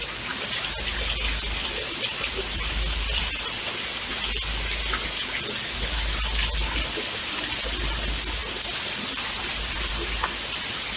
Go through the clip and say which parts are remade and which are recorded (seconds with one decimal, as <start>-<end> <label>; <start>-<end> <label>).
0.0-1.6 recorded; 1.6-4.1 remade; 4.1-8.4 recorded; 8.4-9.9 remade; 9.9-11.0 recorded